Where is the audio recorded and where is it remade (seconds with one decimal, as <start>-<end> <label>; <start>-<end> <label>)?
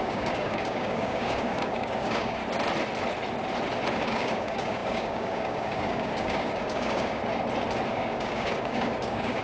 0.0-2.4 remade; 2.4-3.9 recorded; 3.9-7.2 remade; 7.2-7.9 recorded; 7.9-9.4 remade